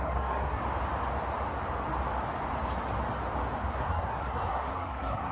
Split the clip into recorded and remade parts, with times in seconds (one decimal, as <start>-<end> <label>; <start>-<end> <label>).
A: 0.0-0.6 remade; 0.6-3.7 recorded; 3.7-5.3 remade